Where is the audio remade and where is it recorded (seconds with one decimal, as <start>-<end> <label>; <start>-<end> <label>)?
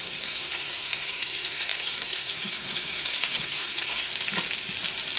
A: 0.0-4.1 remade; 4.1-5.2 recorded